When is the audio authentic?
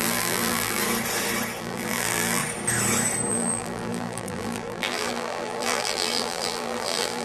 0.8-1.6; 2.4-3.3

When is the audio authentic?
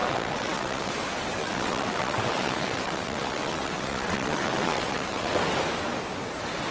0.9-1.4; 5.4-6.7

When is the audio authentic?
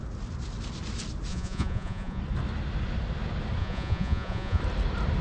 0.0-1.3; 2.2-3.6; 4.6-5.2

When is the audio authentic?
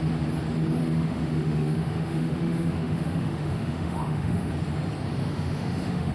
0.0-0.8; 4.5-5.2